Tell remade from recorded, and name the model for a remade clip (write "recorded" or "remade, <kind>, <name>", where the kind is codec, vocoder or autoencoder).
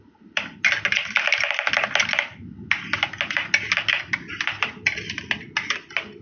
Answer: recorded